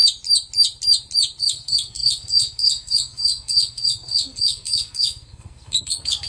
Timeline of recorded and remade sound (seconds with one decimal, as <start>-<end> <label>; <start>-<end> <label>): 0.0-1.4 recorded; 1.4-6.3 remade